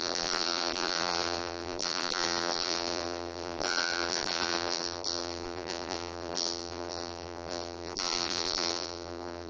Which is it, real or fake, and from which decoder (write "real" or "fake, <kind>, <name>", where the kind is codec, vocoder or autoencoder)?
fake, vocoder, BigVGAN v2